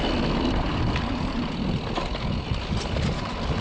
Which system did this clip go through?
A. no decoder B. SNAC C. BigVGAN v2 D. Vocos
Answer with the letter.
A